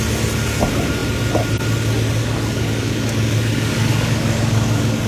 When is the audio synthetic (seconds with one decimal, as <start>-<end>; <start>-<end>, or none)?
2.2-5.1